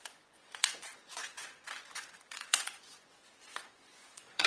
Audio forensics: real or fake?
fake